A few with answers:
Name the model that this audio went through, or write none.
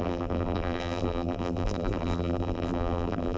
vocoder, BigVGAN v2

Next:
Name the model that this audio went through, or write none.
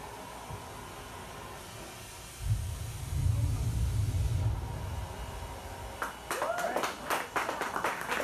none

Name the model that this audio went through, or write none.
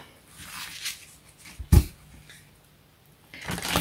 none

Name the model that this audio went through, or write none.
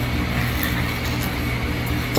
none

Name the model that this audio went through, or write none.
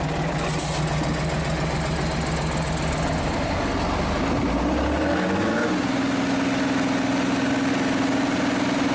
none